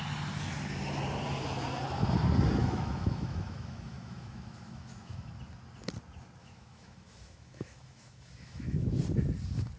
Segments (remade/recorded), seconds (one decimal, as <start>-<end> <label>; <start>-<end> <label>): 0.0-2.6 recorded; 2.6-5.3 remade; 5.3-6.4 recorded; 6.4-9.0 remade; 9.0-9.8 recorded